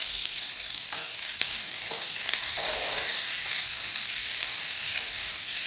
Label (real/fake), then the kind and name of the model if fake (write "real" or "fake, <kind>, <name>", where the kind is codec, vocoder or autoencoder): fake, codec, DAC